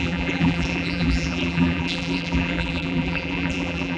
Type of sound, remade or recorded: remade